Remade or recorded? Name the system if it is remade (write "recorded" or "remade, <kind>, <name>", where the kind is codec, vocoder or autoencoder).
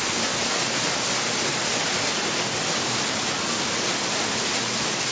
recorded